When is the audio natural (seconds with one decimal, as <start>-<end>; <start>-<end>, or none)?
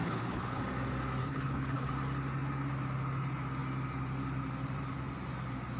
0.6-1.2; 1.9-5.8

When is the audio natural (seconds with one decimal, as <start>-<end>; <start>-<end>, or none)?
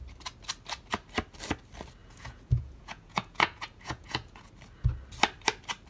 0.0-2.0; 4.5-5.9